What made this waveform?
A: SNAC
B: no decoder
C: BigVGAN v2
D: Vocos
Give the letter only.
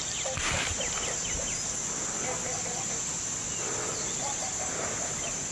B